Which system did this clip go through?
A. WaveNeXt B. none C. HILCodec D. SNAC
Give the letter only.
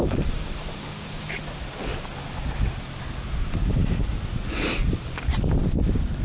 B